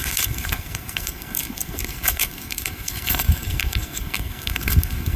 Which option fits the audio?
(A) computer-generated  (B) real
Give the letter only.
A